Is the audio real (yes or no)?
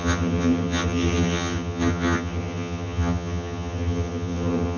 no